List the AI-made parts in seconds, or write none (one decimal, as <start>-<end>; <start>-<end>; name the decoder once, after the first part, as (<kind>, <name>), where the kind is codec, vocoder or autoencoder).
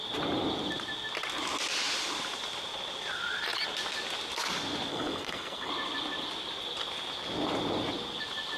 4.9-5.7 (codec, SNAC)